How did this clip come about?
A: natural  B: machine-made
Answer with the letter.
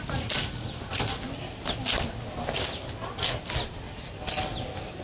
A